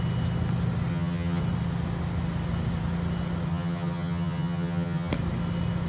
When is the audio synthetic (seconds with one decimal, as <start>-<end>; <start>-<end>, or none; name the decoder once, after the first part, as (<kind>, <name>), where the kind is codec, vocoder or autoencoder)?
0.9-1.4 (vocoder, HiFi-GAN); 3.5-5.1